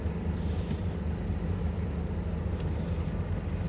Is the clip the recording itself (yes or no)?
yes